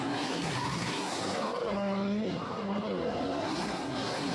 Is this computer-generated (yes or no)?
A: yes